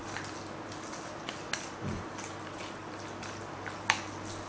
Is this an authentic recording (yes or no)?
yes